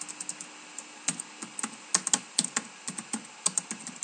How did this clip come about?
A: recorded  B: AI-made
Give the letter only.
A